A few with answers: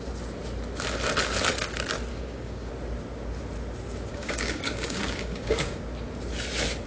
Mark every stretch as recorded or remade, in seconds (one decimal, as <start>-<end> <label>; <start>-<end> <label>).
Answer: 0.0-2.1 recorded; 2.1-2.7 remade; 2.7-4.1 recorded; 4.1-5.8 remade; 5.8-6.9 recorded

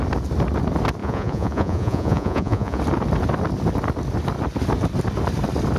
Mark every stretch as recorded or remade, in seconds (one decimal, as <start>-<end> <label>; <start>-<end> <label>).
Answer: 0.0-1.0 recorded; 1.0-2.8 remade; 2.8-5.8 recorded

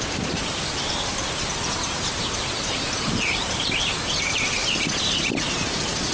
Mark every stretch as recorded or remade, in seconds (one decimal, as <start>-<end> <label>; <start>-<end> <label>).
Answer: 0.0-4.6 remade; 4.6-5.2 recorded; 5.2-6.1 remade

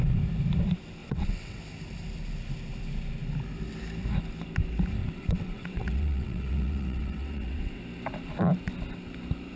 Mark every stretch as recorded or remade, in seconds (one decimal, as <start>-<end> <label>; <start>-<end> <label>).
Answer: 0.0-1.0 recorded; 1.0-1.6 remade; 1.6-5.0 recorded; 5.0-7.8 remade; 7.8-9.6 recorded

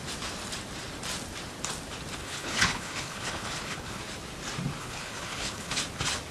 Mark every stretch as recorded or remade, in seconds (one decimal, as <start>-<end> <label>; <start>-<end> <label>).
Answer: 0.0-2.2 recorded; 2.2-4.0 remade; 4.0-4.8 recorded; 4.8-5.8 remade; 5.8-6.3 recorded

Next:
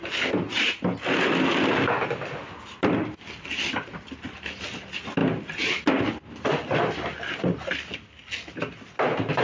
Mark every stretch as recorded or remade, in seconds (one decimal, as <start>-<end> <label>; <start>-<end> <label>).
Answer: 0.0-9.4 recorded

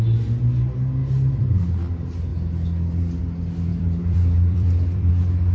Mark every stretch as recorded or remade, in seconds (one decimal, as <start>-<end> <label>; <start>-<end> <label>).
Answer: 0.0-3.7 recorded; 3.7-5.1 remade; 5.1-5.5 recorded

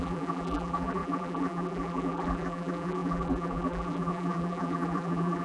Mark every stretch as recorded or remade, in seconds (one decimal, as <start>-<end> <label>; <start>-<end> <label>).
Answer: 0.0-5.4 remade